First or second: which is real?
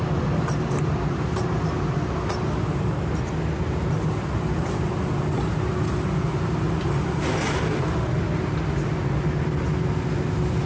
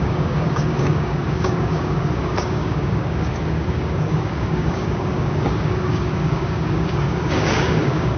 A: first